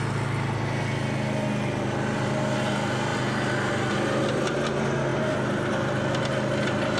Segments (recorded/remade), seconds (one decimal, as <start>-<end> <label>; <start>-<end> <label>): 0.0-7.0 recorded